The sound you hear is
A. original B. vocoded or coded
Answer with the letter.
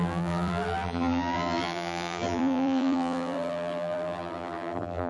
B